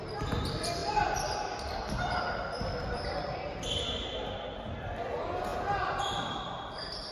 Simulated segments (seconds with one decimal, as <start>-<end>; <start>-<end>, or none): none